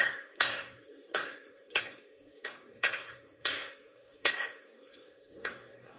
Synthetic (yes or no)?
yes